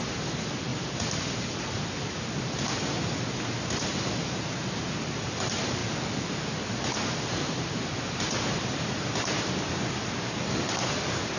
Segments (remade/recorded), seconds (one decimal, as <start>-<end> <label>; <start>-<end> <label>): 0.0-5.8 remade; 5.8-7.9 recorded; 7.9-11.4 remade